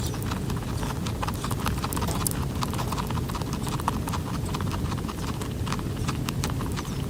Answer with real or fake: real